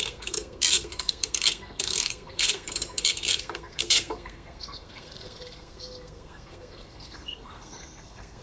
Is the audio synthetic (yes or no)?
yes